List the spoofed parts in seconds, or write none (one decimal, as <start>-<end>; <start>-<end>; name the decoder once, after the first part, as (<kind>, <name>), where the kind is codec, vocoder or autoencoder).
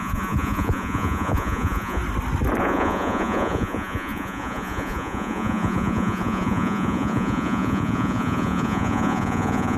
0.0-2.0 (vocoder, Vocos); 2.6-9.8